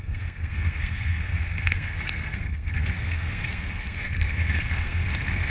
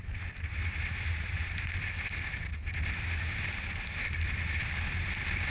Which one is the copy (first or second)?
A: first